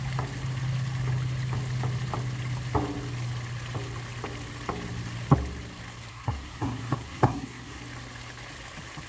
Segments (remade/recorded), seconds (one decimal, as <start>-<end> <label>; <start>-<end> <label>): 0.0-6.1 recorded; 6.1-7.8 remade; 7.8-9.1 recorded